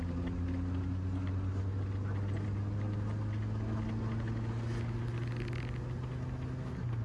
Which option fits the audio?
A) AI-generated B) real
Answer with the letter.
B